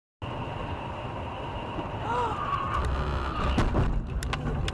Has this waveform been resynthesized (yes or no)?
no